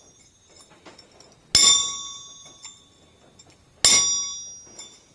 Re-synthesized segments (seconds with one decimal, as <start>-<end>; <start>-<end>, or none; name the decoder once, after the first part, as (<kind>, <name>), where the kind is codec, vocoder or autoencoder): none